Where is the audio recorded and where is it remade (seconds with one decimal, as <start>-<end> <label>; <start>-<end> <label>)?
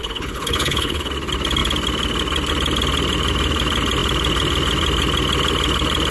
0.0-1.1 remade; 1.1-6.1 recorded